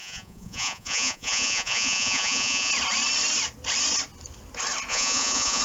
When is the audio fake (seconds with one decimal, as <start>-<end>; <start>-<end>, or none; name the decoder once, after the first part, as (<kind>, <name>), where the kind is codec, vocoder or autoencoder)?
0.0-2.7 (vocoder, Vocos); 4.9-5.6

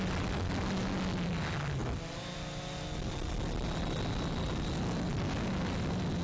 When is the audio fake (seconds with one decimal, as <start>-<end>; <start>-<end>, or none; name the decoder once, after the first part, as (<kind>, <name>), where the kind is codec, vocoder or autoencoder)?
none

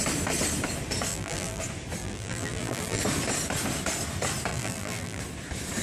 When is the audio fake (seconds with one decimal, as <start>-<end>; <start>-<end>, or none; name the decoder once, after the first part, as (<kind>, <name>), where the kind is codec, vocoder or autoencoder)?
1.1-1.6 (vocoder, BigVGAN v2); 2.0-3.0; 4.5-5.2

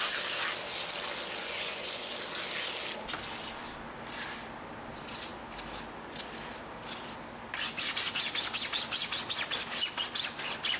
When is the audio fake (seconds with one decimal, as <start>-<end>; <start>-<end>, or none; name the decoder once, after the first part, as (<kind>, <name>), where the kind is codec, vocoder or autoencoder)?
1.4-2.1 (vocoder, Vocos)

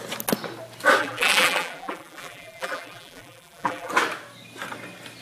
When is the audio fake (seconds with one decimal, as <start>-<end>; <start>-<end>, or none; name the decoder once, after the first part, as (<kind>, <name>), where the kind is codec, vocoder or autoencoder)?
1.0-3.9 (vocoder, BigVGAN v2)

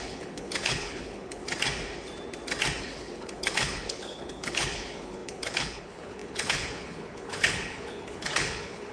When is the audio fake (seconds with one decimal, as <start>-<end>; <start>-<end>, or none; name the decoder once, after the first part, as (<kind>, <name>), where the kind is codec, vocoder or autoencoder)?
0.0-1.4 (codec, HILCodec); 2.8-8.9

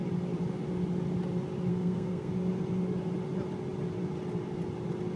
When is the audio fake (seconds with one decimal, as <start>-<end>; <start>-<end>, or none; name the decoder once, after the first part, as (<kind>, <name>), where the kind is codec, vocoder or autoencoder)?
1.7-2.3 (codec, SNAC)